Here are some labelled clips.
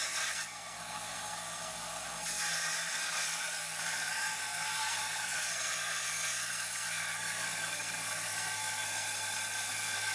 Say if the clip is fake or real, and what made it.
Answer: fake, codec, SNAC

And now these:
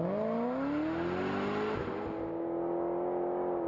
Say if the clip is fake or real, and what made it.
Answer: real